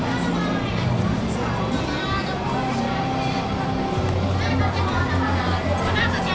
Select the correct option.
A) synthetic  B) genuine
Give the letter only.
B